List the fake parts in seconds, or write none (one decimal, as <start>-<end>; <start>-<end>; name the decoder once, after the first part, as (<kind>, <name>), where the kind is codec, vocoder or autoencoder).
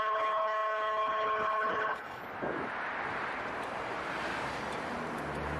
0.0-2.2 (codec, HILCodec)